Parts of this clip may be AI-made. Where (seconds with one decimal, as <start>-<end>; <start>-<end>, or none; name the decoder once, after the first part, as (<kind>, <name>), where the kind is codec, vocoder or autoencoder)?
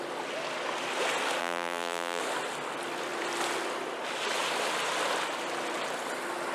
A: 1.4-2.2 (vocoder, BigVGAN v2)